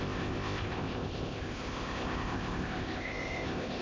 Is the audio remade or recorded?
remade